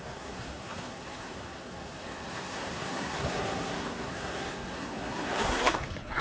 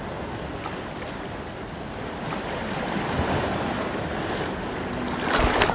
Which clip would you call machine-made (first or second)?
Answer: first